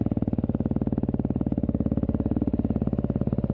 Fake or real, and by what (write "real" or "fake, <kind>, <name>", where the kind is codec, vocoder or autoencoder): real